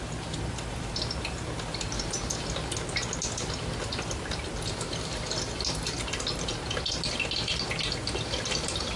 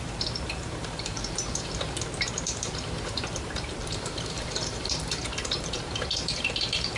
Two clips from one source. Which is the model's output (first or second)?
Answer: second